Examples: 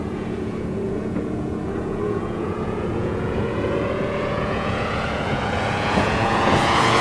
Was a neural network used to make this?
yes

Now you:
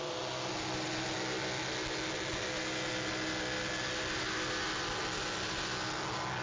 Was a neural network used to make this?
no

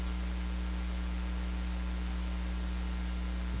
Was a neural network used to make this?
no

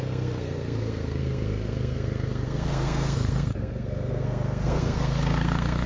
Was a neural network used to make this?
yes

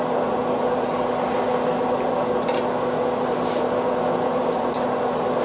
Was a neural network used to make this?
no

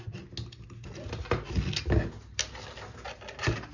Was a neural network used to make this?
no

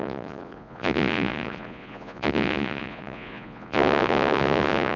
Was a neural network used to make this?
yes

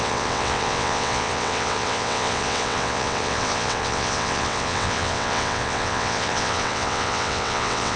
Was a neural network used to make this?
yes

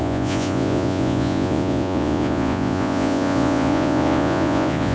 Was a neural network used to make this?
yes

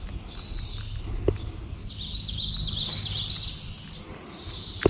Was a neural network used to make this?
no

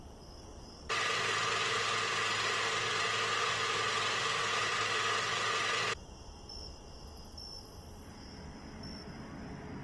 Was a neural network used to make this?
no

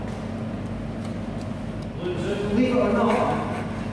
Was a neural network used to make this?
no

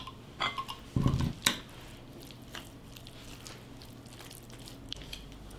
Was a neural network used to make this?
no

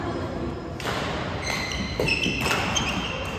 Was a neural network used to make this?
no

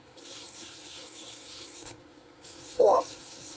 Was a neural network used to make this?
yes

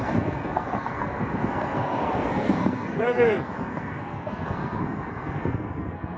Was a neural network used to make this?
yes